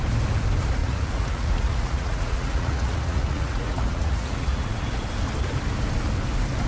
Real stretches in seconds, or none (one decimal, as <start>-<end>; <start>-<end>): 0.0-0.8; 4.8-6.7